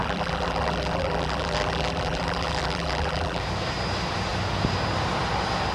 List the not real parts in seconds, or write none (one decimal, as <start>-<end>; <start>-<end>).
0.0-3.4

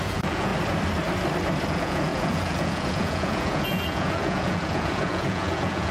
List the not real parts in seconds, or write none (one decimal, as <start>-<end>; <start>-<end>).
0.0-0.5; 1.7-5.9

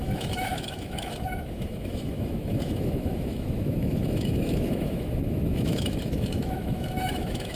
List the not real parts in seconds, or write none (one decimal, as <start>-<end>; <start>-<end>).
0.0-7.6

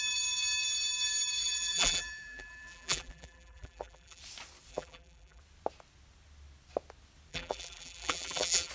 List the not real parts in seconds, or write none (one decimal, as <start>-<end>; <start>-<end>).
1.4-4.2; 4.7-5.4; 7.3-8.7

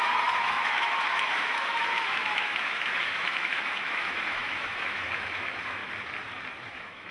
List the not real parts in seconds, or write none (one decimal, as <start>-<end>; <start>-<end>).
0.0-5.8; 6.6-7.1

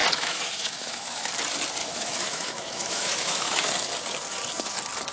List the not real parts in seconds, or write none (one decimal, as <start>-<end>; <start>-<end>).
0.0-1.3; 1.8-3.7

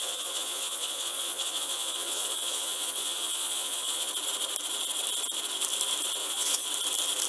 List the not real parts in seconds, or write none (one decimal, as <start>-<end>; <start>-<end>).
0.0-4.1; 6.2-6.7

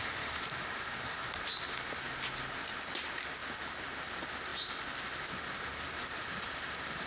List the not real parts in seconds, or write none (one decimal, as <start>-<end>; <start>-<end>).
none